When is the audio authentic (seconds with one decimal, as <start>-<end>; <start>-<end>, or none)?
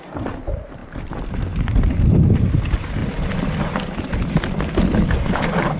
0.0-3.0; 5.2-5.8